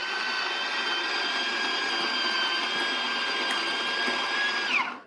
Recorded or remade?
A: recorded